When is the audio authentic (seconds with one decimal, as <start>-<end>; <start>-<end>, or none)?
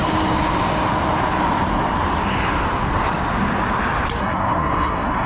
0.0-4.2